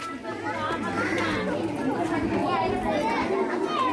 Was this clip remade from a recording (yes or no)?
no